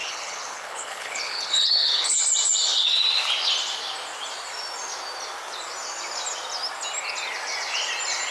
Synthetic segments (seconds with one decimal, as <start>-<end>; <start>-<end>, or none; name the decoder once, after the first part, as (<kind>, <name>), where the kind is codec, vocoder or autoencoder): 0.0-2.2 (codec, HILCodec)